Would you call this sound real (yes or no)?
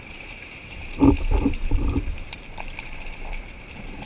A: no